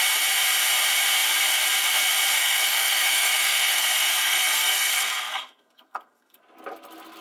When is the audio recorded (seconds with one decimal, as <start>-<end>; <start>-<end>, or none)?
0.0-2.4; 6.4-7.2